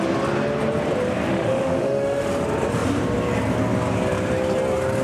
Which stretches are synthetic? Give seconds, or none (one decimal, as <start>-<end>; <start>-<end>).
1.3-2.3